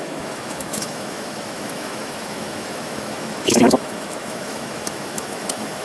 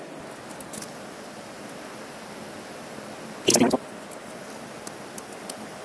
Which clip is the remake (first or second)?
first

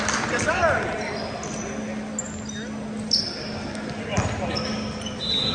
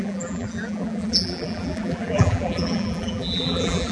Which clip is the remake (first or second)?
second